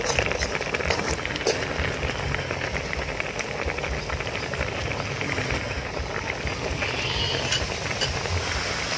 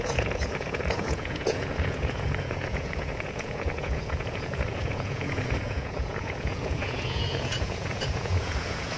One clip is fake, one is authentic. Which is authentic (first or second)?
first